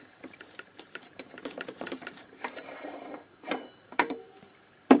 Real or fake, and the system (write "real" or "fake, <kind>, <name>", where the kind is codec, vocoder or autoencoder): fake, vocoder, BigVGAN v2